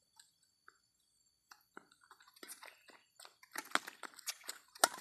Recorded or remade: recorded